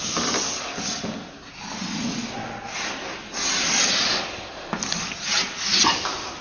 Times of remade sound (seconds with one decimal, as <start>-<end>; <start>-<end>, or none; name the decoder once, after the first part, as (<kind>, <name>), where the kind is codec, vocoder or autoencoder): none